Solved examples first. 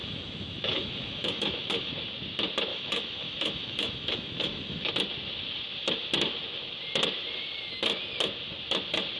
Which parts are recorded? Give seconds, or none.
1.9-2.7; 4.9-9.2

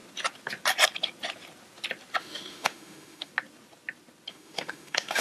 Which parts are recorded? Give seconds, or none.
0.0-2.2; 3.3-4.3